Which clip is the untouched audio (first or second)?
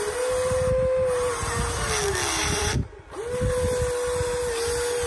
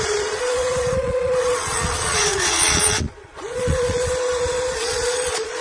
first